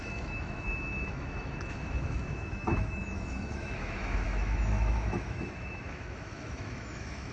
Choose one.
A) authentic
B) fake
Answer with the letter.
B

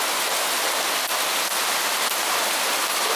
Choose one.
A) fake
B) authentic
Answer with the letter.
B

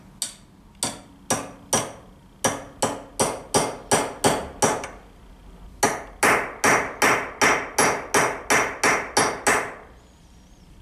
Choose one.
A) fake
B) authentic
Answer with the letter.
B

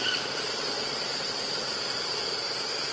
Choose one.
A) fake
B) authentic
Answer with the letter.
B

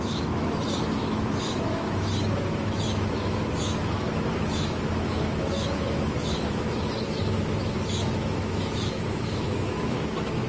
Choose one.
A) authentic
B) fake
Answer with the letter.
B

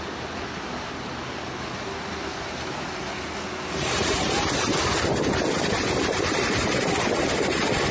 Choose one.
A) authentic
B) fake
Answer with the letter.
A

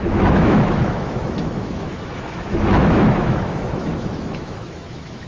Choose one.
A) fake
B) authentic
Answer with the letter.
A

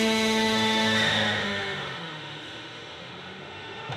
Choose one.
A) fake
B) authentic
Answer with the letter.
A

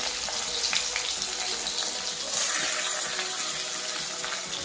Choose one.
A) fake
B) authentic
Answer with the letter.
B